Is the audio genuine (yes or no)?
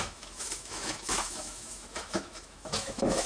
no